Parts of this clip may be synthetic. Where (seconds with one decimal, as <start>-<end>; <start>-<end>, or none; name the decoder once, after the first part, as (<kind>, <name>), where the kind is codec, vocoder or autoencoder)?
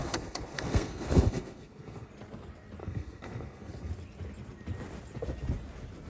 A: 0.0-2.1 (codec, SNAC); 2.8-3.9